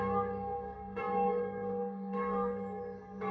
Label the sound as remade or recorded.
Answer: remade